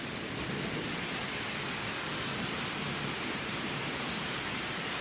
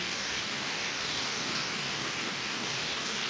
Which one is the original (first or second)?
first